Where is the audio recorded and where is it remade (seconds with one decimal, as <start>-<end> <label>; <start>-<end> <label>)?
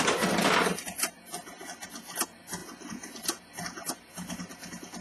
0.0-2.6 recorded; 2.6-4.1 remade; 4.1-5.0 recorded